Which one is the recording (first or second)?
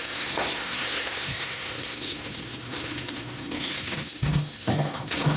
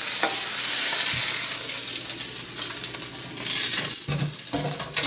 second